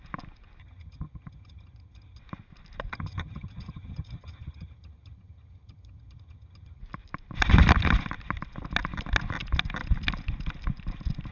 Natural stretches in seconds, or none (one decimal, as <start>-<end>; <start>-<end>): 0.0-0.6; 2.2-2.9; 6.8-11.3